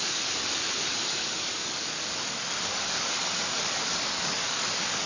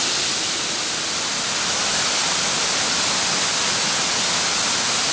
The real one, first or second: second